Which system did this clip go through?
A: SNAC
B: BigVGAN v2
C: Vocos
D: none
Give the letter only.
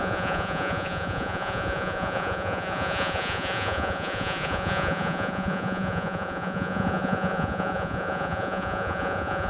C